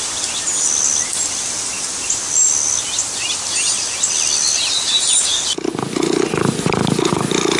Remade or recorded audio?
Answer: recorded